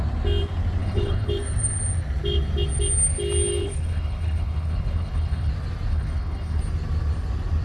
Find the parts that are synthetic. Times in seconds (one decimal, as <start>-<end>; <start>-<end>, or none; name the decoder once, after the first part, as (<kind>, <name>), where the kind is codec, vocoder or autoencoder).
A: 0.8-1.3 (codec, HILCodec); 3.6-5.5; 5.9-6.6